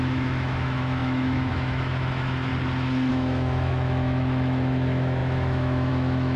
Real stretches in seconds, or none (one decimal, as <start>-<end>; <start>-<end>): 2.5-3.1